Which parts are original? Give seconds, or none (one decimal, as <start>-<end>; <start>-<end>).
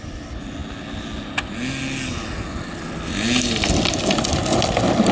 0.0-5.1